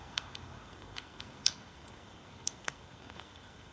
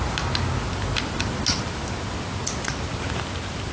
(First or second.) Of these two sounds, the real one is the second